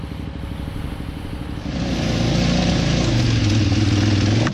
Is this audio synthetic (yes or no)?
no